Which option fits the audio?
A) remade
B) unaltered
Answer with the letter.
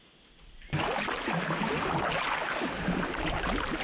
B